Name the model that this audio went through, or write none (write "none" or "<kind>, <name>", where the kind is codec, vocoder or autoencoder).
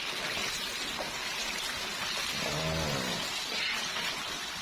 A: none